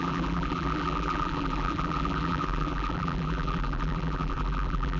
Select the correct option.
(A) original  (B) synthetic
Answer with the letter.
B